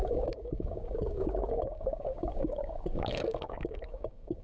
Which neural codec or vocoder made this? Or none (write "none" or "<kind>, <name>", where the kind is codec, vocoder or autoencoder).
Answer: codec, DAC